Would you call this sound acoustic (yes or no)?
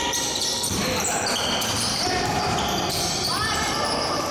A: no